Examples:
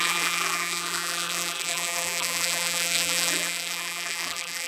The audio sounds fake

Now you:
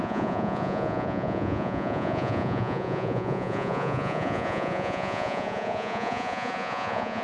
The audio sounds fake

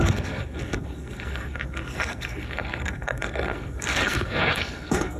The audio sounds fake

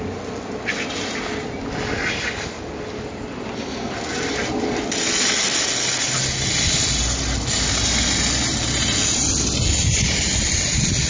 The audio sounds real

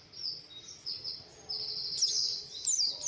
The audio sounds real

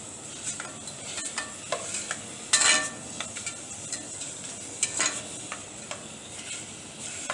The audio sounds real